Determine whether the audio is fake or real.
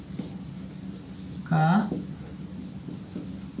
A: real